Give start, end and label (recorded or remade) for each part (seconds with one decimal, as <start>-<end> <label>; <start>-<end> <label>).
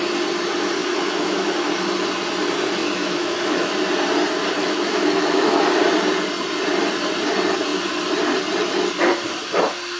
0.0-0.8 recorded; 0.8-1.7 remade; 1.7-2.8 recorded; 2.8-3.7 remade; 3.7-4.6 recorded; 4.6-5.6 remade; 5.6-10.0 recorded